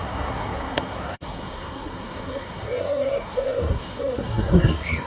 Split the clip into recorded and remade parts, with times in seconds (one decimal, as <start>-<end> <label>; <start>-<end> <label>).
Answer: 0.0-5.1 remade

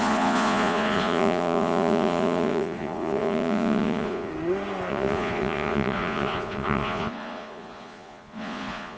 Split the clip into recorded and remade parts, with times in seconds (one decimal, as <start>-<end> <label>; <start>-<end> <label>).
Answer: 0.0-4.3 remade; 4.3-4.9 recorded; 4.9-9.0 remade

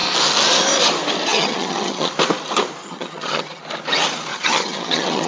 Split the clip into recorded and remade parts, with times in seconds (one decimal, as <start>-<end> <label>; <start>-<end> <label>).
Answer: 0.0-1.3 recorded; 1.3-2.1 remade; 2.1-2.8 recorded; 2.8-3.6 remade; 3.6-4.3 recorded; 4.3-5.3 remade

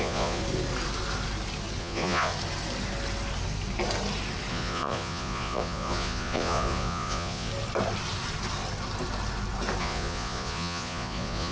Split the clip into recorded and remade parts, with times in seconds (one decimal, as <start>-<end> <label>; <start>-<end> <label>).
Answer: 0.0-0.4 remade; 0.4-1.8 recorded; 1.8-2.3 remade; 2.3-4.5 recorded; 4.5-7.5 remade; 7.5-9.8 recorded; 9.8-11.5 remade